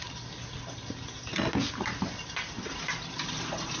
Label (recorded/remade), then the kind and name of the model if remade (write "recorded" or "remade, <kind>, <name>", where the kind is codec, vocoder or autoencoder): recorded